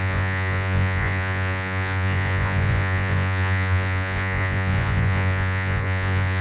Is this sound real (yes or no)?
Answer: no